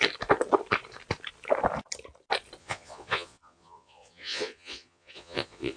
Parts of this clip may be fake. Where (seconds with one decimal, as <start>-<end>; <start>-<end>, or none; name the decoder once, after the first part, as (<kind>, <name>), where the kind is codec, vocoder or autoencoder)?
2.6-5.8 (vocoder, Vocos)